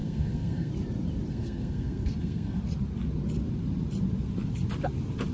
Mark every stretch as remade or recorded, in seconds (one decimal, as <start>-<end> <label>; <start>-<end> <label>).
0.0-0.7 remade; 0.7-1.3 recorded; 1.3-2.6 remade; 2.6-5.3 recorded